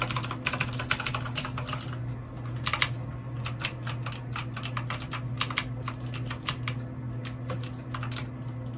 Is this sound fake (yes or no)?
no